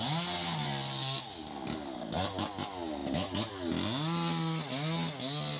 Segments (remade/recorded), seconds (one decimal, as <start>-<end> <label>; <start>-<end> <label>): 0.0-5.6 recorded